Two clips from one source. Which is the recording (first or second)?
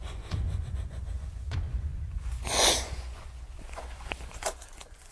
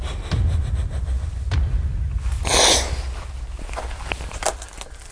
second